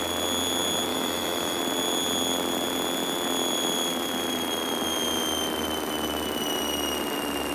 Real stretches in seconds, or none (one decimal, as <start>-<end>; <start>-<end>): 0.0-0.9; 1.6-7.5